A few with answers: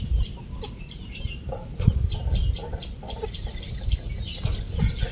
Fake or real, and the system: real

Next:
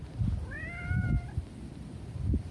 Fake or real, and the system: real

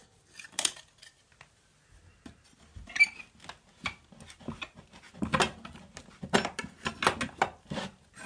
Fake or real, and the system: real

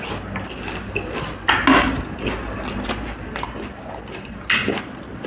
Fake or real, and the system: real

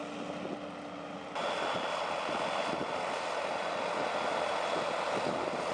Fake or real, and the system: real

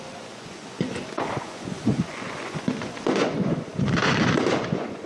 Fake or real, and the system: fake, vocoder, Vocos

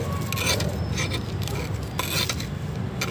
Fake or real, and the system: real